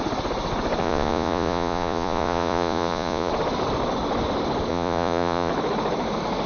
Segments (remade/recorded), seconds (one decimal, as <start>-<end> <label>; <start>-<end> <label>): 0.0-0.8 recorded; 0.8-3.3 remade; 3.3-4.7 recorded; 4.7-5.5 remade; 5.5-6.5 recorded